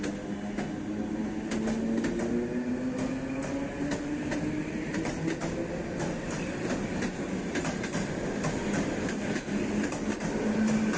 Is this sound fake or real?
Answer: real